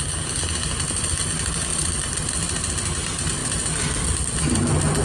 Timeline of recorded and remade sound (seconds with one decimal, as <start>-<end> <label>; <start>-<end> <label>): 0.0-1.7 recorded; 1.7-2.3 remade; 2.3-5.0 recorded

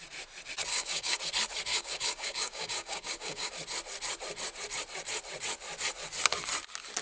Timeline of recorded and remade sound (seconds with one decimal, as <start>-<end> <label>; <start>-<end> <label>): 0.0-0.7 recorded; 0.7-1.2 remade; 1.2-1.7 recorded; 1.7-3.5 remade; 3.5-7.0 recorded

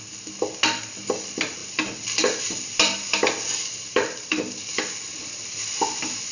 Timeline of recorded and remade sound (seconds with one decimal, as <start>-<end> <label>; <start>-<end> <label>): 0.0-1.6 recorded; 1.6-2.4 remade; 2.4-3.6 recorded; 3.6-4.6 remade; 4.6-5.1 recorded; 5.1-6.3 remade

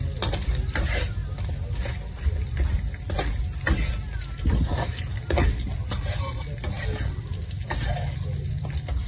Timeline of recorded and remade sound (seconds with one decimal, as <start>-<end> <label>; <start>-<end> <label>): 0.0-9.1 recorded

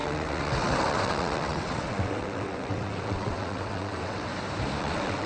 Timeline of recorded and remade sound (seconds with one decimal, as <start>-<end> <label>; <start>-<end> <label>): 0.0-4.3 remade; 4.3-4.8 recorded; 4.8-5.3 remade

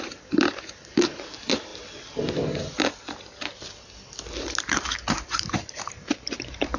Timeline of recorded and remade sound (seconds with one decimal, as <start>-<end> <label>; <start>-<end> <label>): 0.0-1.7 remade; 1.7-4.7 recorded; 4.7-6.8 remade

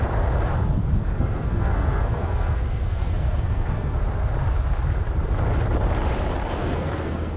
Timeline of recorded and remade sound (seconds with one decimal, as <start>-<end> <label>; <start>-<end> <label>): 0.0-0.8 recorded; 0.8-4.0 remade; 4.0-6.6 recorded; 6.6-7.4 remade